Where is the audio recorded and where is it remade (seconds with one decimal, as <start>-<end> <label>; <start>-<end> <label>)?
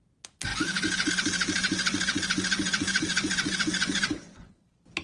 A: 0.0-0.5 recorded; 0.5-1.1 remade; 1.1-1.6 recorded; 1.6-4.6 remade; 4.6-5.0 recorded